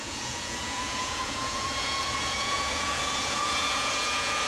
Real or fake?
fake